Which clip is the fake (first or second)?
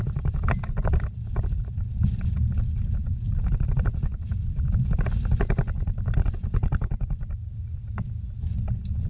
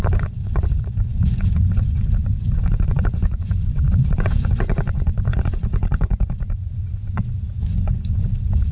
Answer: second